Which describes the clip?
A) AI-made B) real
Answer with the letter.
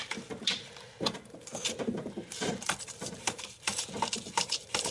A